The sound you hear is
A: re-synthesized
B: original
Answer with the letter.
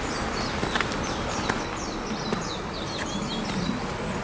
B